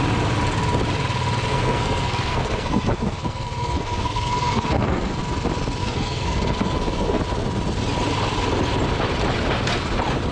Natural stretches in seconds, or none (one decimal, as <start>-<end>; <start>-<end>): 0.0-1.5; 5.2-5.8; 7.2-10.3

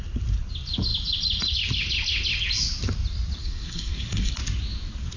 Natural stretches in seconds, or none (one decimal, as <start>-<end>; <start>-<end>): 0.0-3.4; 4.3-5.2

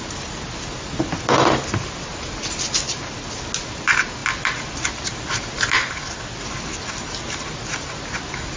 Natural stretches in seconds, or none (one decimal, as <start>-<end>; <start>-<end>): 0.0-8.6

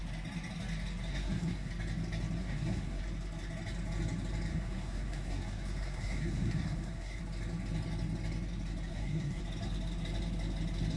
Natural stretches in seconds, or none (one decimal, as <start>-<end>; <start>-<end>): 0.0-1.1; 1.7-2.4; 3.0-4.5; 7.2-8.9; 9.4-11.0

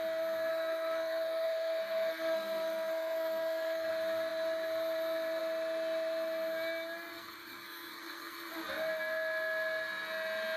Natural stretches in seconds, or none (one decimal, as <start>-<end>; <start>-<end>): 0.0-0.5; 3.9-7.1; 8.5-10.6

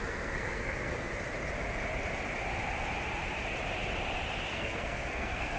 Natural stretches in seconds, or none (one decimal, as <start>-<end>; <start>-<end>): 1.1-4.5